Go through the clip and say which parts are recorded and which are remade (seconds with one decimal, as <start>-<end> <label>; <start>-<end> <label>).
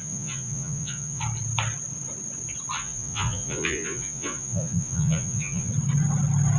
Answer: 0.0-1.2 remade; 1.2-2.8 recorded; 2.8-5.7 remade; 5.7-6.6 recorded